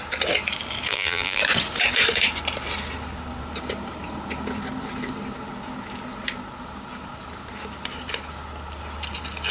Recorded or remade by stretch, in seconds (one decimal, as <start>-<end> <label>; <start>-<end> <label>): 0.0-0.9 recorded; 0.9-1.4 remade; 1.4-9.5 recorded